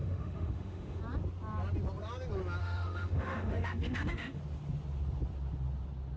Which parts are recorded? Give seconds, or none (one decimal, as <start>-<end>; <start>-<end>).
1.0-2.6; 4.4-6.2